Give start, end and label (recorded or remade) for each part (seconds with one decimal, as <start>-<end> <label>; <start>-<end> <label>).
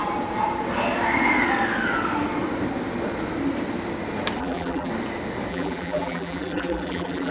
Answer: 0.0-4.4 recorded; 4.4-4.9 remade; 4.9-5.5 recorded; 5.5-7.3 remade